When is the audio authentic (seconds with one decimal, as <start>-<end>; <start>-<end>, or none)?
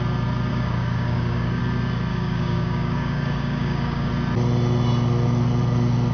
0.0-0.5; 1.6-2.1; 4.1-6.1